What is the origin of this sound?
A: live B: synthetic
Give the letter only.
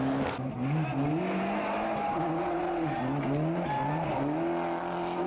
A